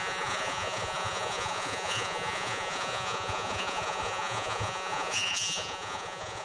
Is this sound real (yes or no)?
no